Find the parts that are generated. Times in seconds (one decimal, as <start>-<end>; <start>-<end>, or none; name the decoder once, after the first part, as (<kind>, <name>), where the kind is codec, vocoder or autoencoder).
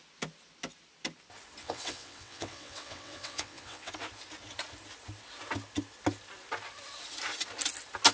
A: 1.6-3.9 (vocoder, WaveNeXt)